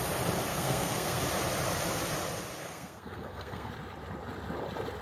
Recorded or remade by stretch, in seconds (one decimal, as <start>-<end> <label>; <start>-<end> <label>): 0.0-0.5 recorded; 0.5-1.2 remade; 1.2-2.6 recorded; 2.6-3.7 remade; 3.7-5.0 recorded

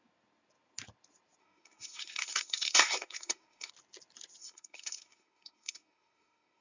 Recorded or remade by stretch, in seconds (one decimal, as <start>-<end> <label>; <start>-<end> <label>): 0.0-1.4 recorded; 1.4-3.7 remade; 3.7-4.4 recorded; 4.4-6.6 remade

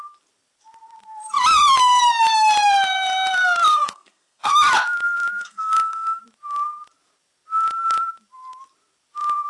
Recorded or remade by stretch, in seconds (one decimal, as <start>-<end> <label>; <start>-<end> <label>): 0.0-3.7 recorded; 3.7-4.5 remade; 4.5-5.4 recorded; 5.4-6.2 remade; 6.2-9.5 recorded

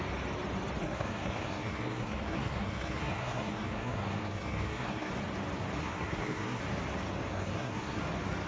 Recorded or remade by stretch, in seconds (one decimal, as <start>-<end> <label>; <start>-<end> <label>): 0.0-0.8 recorded; 0.8-5.1 remade; 5.1-5.8 recorded; 5.8-6.6 remade; 6.6-7.3 recorded; 7.3-8.0 remade; 8.0-8.5 recorded